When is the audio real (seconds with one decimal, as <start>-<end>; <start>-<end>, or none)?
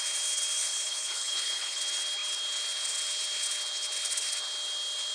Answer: 0.0-0.6; 1.8-5.1